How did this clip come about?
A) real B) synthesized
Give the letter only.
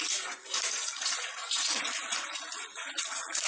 B